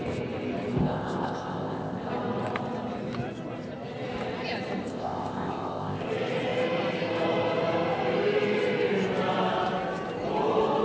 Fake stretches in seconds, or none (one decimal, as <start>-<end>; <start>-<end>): 0.8-2.1; 4.9-6.1

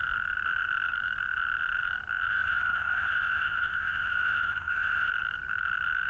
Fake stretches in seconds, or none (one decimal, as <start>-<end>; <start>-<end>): 2.3-5.1